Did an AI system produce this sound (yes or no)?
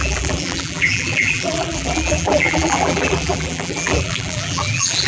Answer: yes